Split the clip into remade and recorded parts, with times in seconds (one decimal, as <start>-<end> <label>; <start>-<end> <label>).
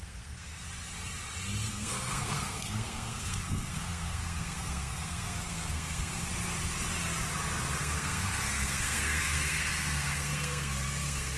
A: 0.0-0.6 remade; 0.6-1.7 recorded; 1.7-6.3 remade; 6.3-7.8 recorded; 7.8-11.4 remade